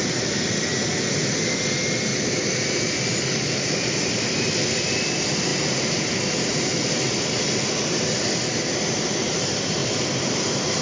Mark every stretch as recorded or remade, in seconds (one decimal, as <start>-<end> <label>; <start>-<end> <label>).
0.0-2.1 recorded; 2.1-2.8 remade; 2.8-9.8 recorded; 9.8-10.8 remade